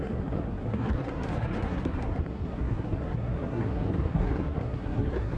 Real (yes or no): no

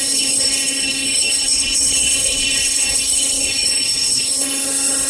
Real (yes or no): no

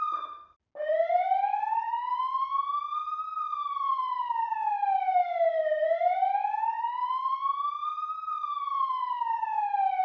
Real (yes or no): yes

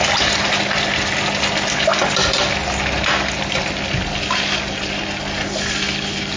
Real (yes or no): yes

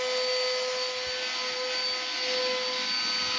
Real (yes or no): yes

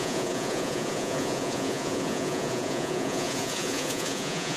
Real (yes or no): no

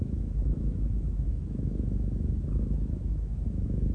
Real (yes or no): no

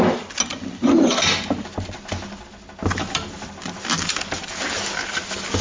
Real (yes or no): yes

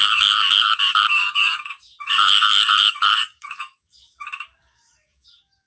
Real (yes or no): no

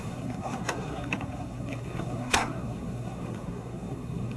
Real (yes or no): no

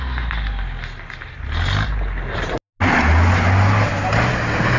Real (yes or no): yes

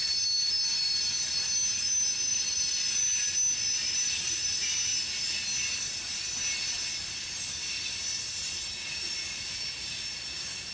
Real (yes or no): yes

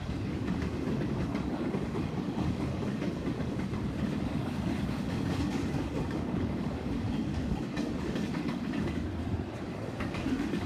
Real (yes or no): no